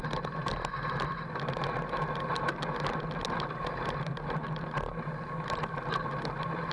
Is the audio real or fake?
real